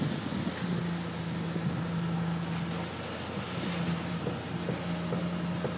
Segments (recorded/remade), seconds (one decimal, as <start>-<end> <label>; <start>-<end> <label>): 0.0-5.8 recorded